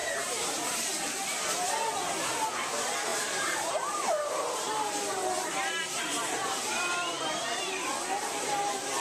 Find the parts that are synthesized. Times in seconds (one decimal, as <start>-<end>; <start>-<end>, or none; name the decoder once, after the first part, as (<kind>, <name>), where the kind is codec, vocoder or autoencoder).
0.0-0.8 (vocoder, BigVGAN v2); 3.1-7.6